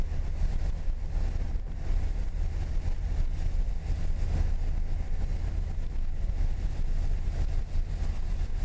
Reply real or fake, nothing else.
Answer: real